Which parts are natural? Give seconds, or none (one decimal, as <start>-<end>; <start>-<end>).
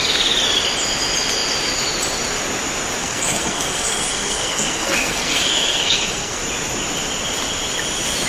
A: 0.0-3.0; 6.4-8.3